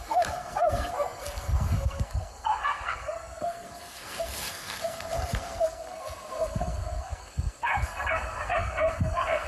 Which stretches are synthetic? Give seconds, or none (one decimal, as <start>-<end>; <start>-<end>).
0.0-9.5